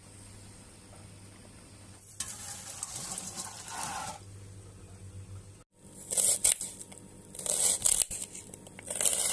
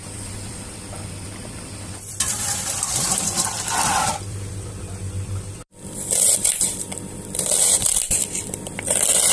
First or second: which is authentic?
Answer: first